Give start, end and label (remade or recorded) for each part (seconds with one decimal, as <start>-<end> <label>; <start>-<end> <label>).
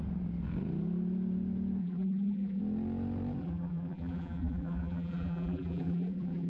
0.0-1.8 recorded; 1.8-2.6 remade; 2.6-3.4 recorded; 3.4-6.5 remade